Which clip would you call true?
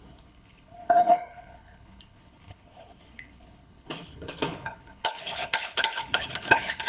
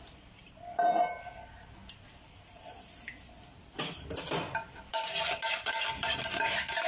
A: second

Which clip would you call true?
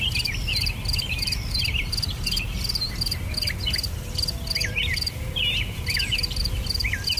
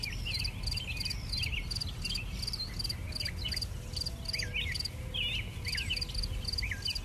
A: second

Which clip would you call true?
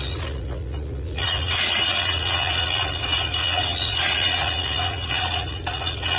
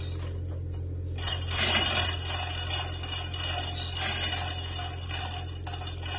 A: second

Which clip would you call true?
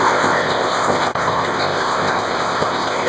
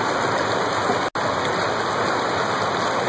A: second